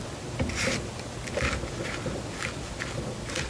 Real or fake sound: real